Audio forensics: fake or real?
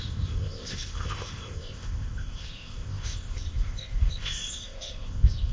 fake